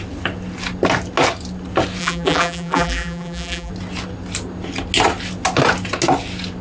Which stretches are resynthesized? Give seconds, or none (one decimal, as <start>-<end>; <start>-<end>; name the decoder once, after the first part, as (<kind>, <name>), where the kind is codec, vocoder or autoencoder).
2.0-3.7 (vocoder, BigVGAN v2)